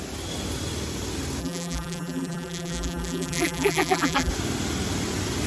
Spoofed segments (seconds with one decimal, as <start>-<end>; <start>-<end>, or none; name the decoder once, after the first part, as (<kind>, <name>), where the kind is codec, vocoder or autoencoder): 1.4-4.3 (vocoder, BigVGAN v2)